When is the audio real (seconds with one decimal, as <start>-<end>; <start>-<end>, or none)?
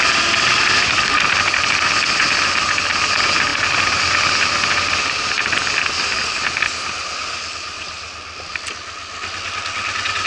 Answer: 0.0-10.3